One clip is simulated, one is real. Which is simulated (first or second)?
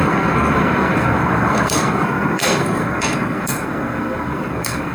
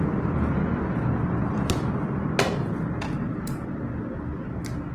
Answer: first